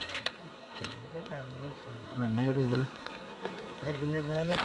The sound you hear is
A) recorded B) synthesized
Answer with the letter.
B